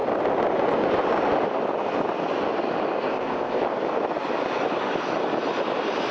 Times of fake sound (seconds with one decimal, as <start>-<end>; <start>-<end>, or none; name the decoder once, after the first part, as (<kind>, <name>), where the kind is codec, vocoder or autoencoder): 3.1-3.6 (codec, ZipCodec)